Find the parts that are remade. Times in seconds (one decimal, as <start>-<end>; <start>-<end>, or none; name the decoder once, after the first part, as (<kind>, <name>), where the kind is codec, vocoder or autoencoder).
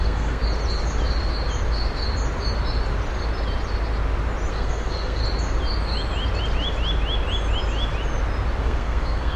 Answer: 0.0-0.4 (codec, SNAC); 4.5-5.2; 8.6-9.4